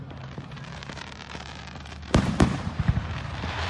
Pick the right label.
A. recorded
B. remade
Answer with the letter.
B